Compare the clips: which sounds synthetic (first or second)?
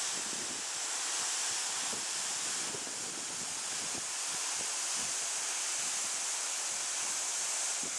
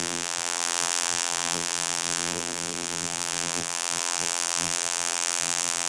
second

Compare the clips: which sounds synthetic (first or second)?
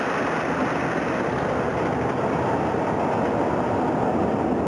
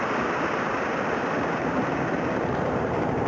second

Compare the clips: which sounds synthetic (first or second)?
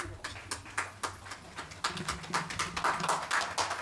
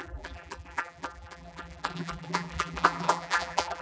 second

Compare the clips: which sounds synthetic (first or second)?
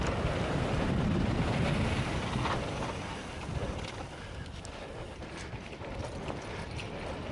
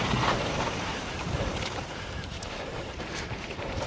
second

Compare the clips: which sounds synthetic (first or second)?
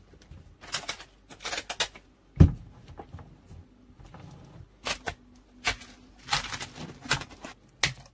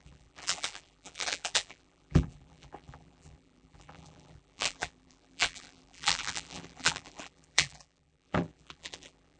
second